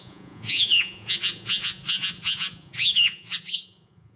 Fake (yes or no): yes